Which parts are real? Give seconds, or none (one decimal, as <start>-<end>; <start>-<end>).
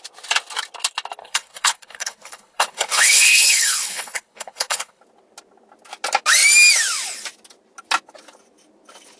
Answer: 0.0-1.2; 5.0-9.2